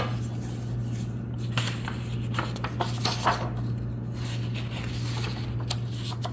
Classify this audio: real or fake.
real